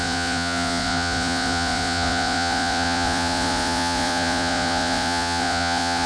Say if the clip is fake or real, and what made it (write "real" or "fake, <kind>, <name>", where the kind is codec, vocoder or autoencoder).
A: fake, vocoder, Vocos